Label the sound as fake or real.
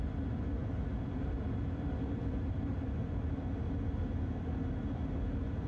real